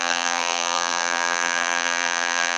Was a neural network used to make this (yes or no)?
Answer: yes